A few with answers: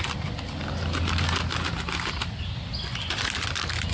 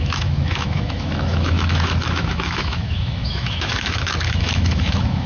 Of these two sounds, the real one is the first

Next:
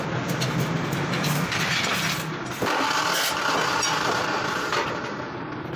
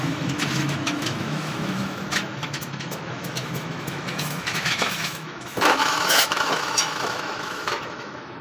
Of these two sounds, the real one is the first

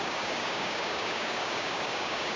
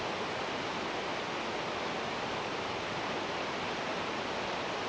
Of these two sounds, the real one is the second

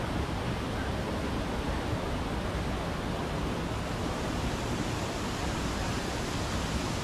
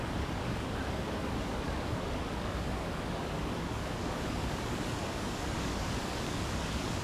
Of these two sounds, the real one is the first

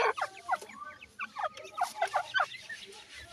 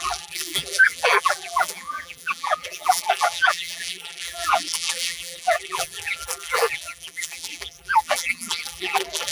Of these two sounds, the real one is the first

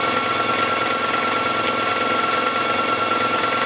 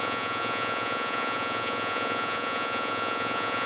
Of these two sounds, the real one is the first